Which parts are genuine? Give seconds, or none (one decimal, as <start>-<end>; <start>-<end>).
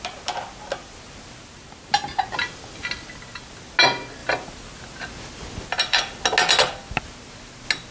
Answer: 0.0-7.9